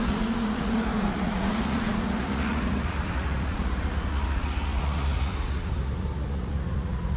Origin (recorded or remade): remade